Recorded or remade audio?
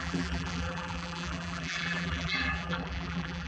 remade